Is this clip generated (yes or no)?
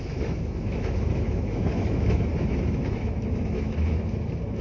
yes